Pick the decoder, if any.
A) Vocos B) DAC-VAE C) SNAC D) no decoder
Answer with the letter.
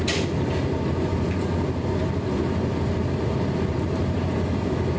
D